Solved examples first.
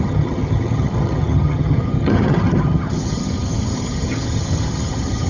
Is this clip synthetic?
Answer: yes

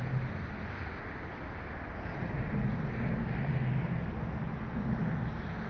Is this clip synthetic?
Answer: no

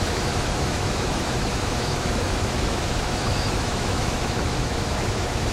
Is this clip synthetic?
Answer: yes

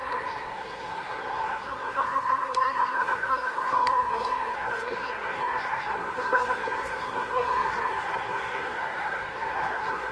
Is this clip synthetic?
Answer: yes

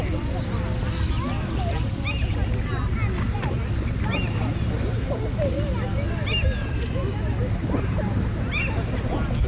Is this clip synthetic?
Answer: no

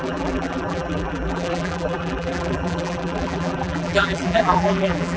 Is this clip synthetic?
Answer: yes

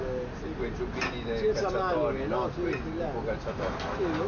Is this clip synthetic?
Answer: no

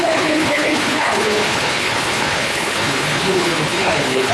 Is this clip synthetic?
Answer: yes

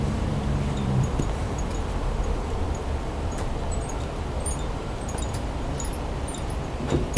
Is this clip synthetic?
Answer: yes